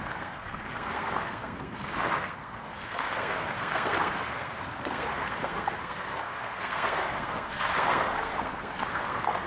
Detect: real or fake fake